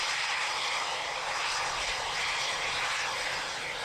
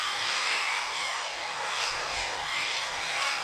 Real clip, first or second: first